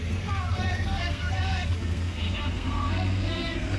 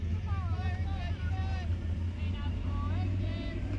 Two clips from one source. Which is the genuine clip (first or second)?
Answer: second